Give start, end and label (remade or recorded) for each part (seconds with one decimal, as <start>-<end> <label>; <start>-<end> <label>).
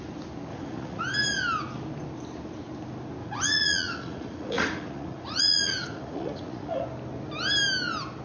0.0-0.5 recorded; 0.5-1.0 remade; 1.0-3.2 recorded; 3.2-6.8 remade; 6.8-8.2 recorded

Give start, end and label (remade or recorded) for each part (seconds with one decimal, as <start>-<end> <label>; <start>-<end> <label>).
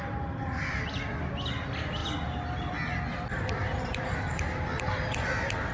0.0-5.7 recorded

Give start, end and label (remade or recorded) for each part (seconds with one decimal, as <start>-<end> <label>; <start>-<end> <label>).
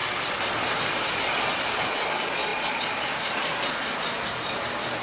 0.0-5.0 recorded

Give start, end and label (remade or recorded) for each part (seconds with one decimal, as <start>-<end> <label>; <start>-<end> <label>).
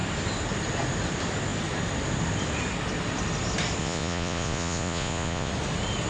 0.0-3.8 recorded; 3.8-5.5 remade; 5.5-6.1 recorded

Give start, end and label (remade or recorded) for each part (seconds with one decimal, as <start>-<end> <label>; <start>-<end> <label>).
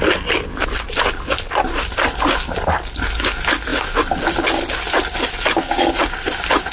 0.0-6.7 recorded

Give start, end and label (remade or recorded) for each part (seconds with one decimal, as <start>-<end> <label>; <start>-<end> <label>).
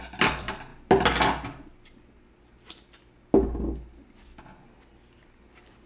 0.0-5.9 recorded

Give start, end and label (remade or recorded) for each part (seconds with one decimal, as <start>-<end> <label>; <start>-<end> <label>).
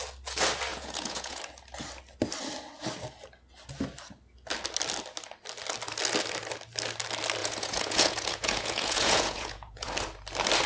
0.0-0.7 recorded; 0.7-1.4 remade; 1.4-7.4 recorded; 7.4-9.9 remade; 9.9-10.7 recorded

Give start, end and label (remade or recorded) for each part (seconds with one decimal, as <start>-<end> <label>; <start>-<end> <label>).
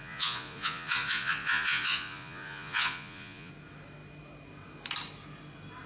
0.0-3.5 remade; 3.5-5.9 recorded